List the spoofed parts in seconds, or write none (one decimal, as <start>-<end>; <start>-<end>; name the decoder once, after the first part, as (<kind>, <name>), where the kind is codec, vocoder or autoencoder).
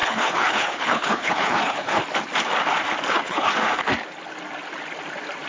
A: 0.0-2.0 (codec, HILCodec); 3.1-3.5